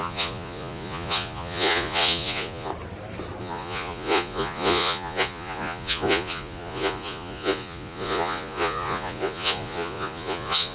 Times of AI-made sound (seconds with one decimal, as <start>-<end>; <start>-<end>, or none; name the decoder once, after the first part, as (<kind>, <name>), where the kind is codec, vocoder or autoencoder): 0.0-2.7 (vocoder, Vocos); 3.4-10.7